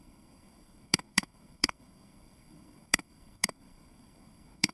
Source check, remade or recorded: remade